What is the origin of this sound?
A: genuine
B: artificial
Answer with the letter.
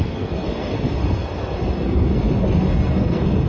B